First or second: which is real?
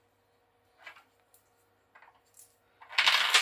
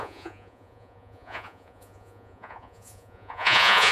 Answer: first